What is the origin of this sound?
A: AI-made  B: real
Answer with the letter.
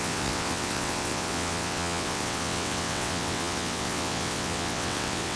A